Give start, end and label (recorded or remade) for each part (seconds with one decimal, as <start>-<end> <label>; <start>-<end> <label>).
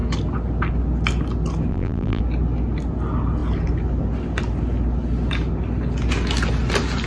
0.0-1.7 recorded; 1.7-2.2 remade; 2.2-7.1 recorded